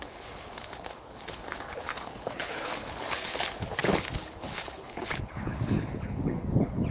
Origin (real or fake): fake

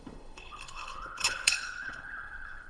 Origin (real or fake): fake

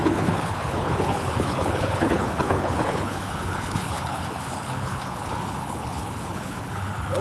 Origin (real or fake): fake